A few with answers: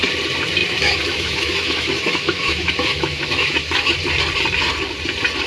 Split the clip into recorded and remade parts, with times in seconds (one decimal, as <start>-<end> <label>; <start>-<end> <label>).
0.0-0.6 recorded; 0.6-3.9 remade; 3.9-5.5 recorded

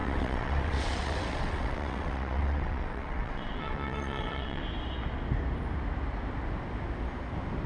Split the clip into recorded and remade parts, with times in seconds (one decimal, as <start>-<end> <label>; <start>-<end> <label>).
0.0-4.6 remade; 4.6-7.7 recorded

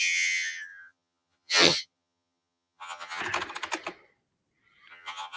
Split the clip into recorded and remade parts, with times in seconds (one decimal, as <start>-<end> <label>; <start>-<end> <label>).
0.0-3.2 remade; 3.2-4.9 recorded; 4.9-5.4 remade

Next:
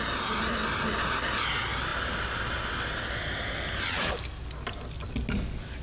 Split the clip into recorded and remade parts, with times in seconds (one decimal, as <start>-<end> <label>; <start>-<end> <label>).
0.0-5.8 recorded

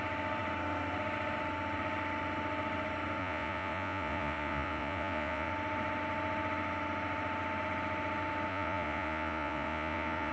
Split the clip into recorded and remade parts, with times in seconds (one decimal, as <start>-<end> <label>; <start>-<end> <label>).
0.0-3.2 recorded; 3.2-5.5 remade; 5.5-8.5 recorded; 8.5-10.3 remade